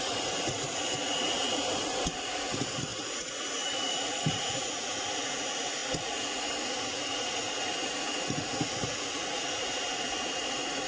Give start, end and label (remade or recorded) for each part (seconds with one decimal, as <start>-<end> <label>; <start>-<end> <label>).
0.0-10.9 remade

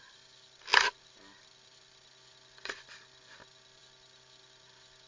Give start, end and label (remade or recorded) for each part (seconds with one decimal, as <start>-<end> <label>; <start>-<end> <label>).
0.0-5.1 recorded

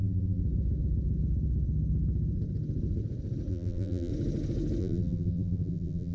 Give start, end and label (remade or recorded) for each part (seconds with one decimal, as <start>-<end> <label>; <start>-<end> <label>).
0.0-0.4 remade; 0.4-3.5 recorded; 3.5-4.1 remade; 4.1-4.8 recorded; 4.8-6.1 remade

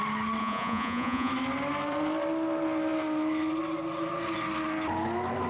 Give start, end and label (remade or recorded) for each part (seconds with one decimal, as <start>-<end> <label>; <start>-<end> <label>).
0.0-0.4 recorded; 0.4-1.3 remade; 1.3-5.5 recorded

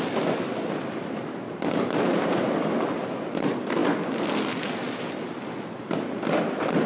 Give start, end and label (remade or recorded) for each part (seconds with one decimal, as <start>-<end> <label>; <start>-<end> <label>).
0.0-6.9 recorded